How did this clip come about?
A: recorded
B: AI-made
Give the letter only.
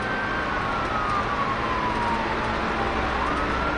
A